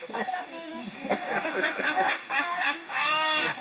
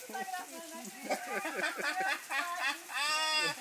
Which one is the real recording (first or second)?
second